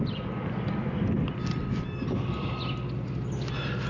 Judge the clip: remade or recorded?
recorded